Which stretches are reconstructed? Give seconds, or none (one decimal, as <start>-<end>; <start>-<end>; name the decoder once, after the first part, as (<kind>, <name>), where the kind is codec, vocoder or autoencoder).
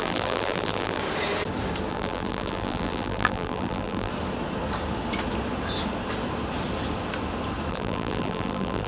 0.0-1.0 (vocoder, BigVGAN v2); 1.9-4.1; 7.7-8.9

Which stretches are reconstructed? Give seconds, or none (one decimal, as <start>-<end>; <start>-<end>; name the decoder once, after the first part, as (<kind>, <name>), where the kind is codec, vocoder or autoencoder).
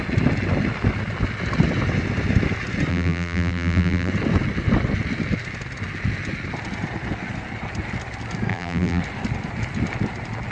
2.9-4.1 (vocoder, BigVGAN v2); 8.5-9.0